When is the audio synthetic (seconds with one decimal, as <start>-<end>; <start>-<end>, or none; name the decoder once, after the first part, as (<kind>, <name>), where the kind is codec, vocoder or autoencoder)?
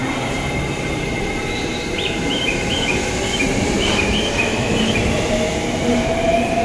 0.0-6.6 (vocoder, BigVGAN v2)